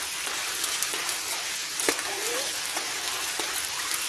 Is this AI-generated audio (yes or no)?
no